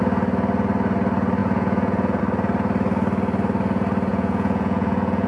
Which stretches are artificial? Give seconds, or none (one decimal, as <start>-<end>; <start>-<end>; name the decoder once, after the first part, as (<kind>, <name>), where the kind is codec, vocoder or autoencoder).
1.4-2.2 (vocoder, Vocos); 4.1-5.3